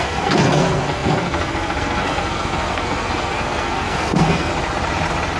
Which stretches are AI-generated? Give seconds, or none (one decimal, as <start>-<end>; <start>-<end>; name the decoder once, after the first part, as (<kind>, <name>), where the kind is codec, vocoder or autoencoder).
0.0-4.5 (codec, SNAC)